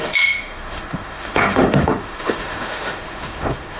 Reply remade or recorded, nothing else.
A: remade